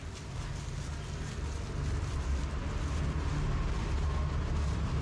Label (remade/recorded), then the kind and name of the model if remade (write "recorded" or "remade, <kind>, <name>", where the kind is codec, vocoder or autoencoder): recorded